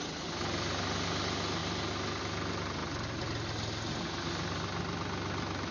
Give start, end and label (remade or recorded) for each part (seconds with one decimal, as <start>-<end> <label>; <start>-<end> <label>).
0.0-5.7 recorded